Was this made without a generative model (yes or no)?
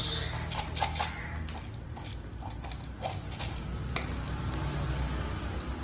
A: yes